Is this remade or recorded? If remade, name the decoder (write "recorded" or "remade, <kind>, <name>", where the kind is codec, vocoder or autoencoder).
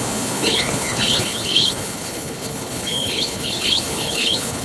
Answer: remade, codec, HILCodec